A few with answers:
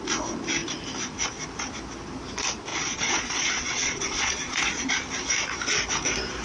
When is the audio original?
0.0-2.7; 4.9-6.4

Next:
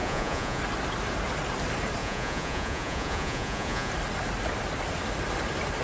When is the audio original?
0.6-2.0; 3.9-5.8